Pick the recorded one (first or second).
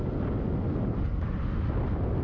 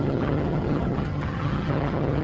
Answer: first